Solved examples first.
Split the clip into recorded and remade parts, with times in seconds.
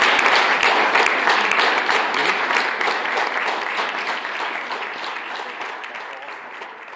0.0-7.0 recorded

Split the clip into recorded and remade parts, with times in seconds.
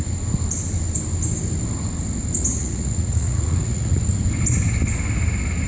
0.0-2.6 recorded; 2.6-4.0 remade; 4.0-5.7 recorded